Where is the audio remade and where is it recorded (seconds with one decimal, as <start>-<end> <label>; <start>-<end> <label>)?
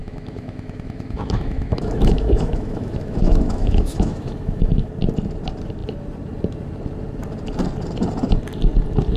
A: 0.0-4.9 remade; 4.9-9.2 recorded